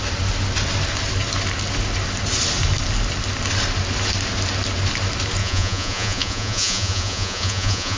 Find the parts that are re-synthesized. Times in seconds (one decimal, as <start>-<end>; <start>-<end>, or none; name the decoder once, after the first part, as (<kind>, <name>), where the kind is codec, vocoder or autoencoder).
5.4-8.0 (vocoder, Vocos)